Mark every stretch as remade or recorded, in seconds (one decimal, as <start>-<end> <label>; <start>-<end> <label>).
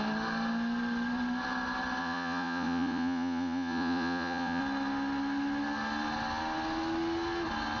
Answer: 0.0-2.0 recorded; 2.0-4.6 remade; 4.6-7.8 recorded